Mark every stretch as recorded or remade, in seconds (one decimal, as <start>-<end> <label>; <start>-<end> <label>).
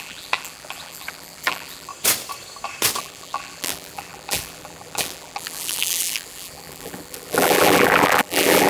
0.0-1.9 remade; 1.9-3.0 recorded; 3.0-8.7 remade